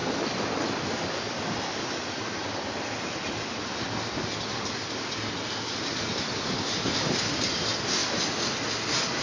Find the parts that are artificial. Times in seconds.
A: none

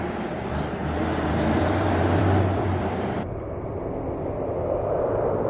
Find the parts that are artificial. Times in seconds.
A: 0.0-5.5

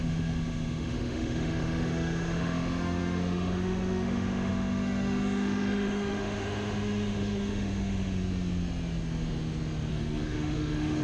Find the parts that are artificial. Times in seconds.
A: 0.0-8.2; 9.9-11.0

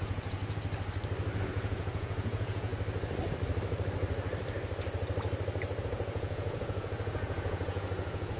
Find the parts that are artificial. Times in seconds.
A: 0.0-0.4; 1.4-2.7; 5.8-8.4

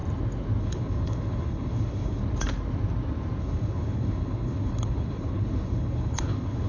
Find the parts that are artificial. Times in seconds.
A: 0.6-2.2; 3.4-6.7

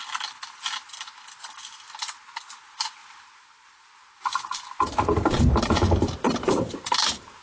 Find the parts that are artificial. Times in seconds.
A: 3.0-7.4

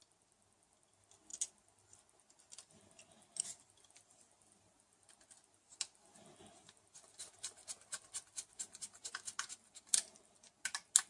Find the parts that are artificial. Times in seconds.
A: none